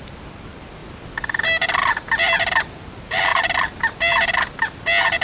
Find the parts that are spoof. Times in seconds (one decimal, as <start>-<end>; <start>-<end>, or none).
none